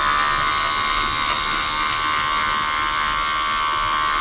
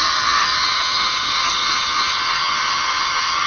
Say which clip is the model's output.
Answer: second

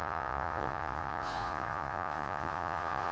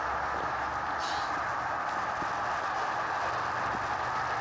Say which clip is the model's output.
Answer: first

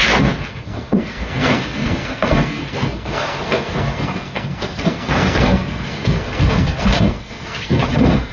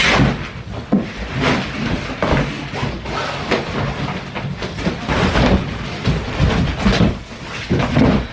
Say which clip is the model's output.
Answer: first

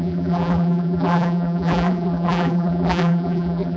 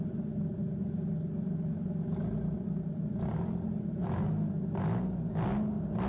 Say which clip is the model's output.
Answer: first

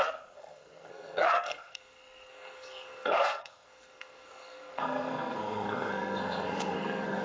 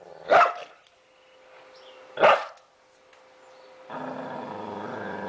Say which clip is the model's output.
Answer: first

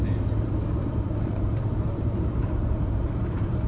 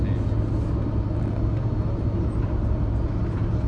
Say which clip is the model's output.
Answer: first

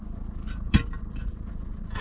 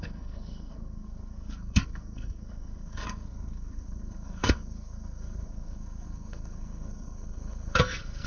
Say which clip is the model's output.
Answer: second